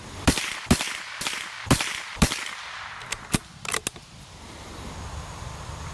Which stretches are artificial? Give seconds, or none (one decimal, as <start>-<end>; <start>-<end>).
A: none